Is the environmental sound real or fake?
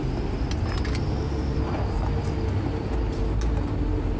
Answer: real